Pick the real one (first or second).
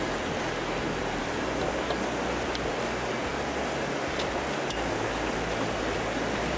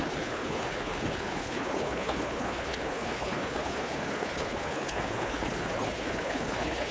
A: first